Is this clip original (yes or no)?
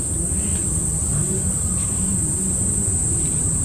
no